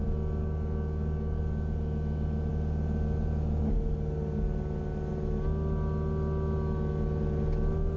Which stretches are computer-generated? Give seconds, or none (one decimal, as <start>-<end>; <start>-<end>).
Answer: 0.4-1.4